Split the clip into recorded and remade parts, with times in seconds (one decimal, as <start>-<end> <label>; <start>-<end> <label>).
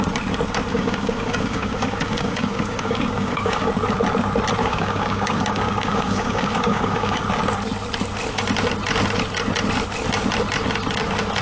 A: 0.0-0.7 recorded; 0.7-3.7 remade; 3.7-4.6 recorded; 4.6-7.2 remade; 7.2-11.4 recorded